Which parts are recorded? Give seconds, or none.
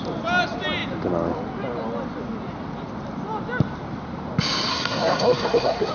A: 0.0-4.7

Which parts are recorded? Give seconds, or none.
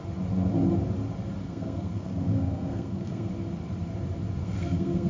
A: 0.0-1.4; 3.3-4.4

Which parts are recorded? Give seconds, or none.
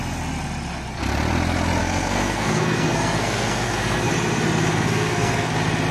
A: 0.0-1.8; 4.1-4.7; 5.5-5.9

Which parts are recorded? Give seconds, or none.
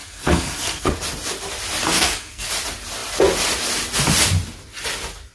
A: 0.9-1.8; 2.5-5.3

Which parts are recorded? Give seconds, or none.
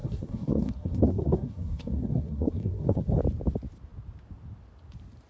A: 3.2-5.3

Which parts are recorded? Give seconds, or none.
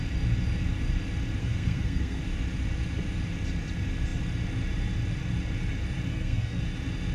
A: 0.0-1.4; 2.2-6.1; 6.6-7.1